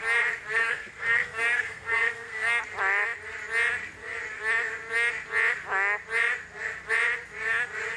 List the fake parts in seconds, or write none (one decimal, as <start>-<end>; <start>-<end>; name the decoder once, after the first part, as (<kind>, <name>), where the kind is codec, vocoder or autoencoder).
0.6-2.6 (codec, SNAC)